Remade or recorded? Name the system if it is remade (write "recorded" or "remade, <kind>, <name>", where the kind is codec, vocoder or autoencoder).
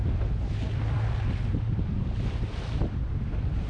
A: recorded